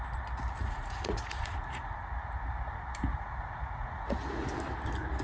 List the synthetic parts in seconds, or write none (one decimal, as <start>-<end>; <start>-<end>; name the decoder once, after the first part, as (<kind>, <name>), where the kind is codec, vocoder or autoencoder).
0.6-1.9 (vocoder, Vocos); 3.1-4.5